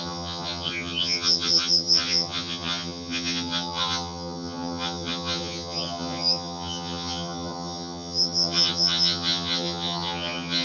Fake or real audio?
fake